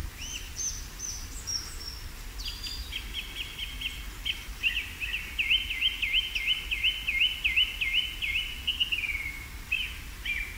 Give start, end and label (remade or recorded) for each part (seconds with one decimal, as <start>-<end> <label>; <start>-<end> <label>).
0.0-2.4 remade; 2.4-10.6 recorded